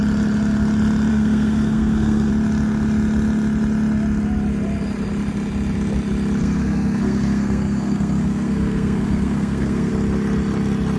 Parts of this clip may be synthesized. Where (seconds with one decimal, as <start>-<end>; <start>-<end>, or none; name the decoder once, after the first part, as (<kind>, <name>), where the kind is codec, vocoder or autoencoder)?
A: 1.1-2.3 (codec, SNAC); 6.4-9.9